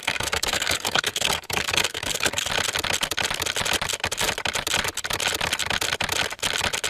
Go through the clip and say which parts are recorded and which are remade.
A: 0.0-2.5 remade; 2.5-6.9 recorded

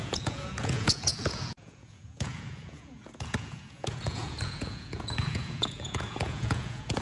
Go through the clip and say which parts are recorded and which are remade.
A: 0.0-7.0 remade

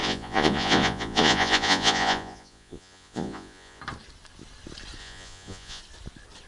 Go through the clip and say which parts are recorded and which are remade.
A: 0.0-3.8 remade; 3.8-5.0 recorded; 5.0-5.8 remade; 5.8-6.5 recorded

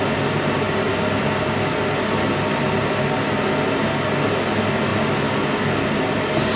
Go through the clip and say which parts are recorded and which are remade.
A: 0.0-6.6 recorded

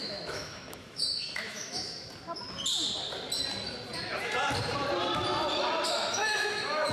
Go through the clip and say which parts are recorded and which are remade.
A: 0.0-2.1 remade; 2.1-6.1 recorded; 6.1-6.9 remade

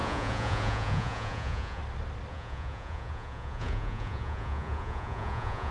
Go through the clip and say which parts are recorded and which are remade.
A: 0.0-1.8 remade; 1.8-2.3 recorded; 2.3-5.7 remade

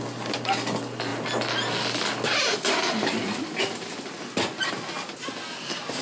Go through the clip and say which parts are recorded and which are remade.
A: 0.0-6.0 recorded

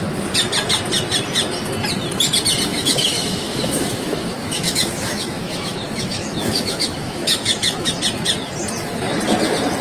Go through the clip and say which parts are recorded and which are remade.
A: 0.0-2.7 recorded; 2.7-7.9 remade; 7.9-9.8 recorded